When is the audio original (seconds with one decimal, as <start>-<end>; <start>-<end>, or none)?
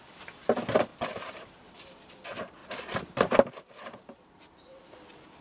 0.0-0.9; 2.1-2.6; 4.8-5.4